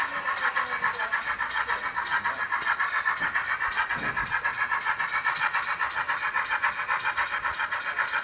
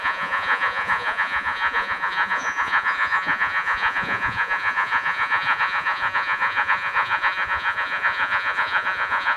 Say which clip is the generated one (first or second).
second